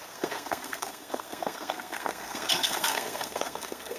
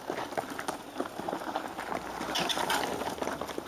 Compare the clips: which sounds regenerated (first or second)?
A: first